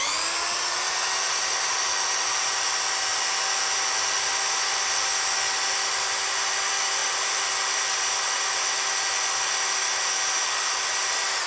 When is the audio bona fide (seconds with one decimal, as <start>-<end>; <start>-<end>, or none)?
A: 0.0-11.5